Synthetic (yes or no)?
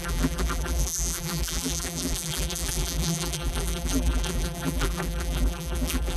yes